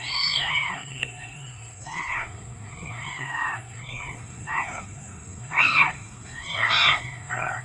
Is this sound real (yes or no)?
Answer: no